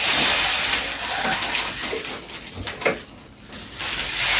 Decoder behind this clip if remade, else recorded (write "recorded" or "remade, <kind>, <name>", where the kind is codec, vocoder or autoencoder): recorded